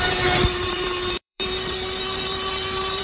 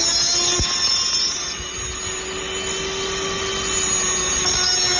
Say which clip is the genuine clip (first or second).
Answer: second